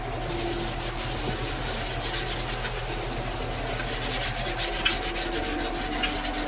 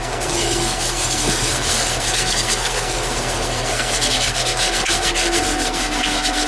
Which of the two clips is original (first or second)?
first